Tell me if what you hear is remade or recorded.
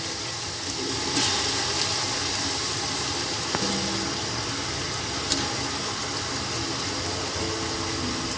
recorded